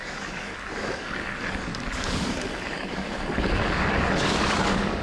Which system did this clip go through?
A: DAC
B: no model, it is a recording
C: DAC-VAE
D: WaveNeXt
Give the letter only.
A